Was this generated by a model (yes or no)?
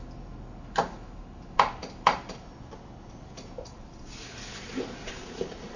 no